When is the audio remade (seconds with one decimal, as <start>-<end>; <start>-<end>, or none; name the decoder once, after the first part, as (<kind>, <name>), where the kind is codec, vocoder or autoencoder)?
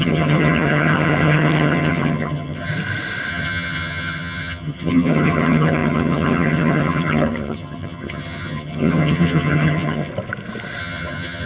0.0-2.7 (vocoder, HiFi-GAN); 3.3-10.1; 10.8-11.5